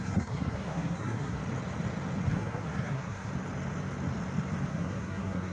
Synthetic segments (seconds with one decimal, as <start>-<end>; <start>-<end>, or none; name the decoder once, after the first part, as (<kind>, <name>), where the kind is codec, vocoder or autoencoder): 0.0-1.4 (codec, SNAC); 2.3-3.3; 4.7-5.5